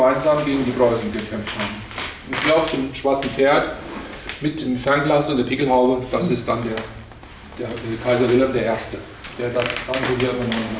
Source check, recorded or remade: recorded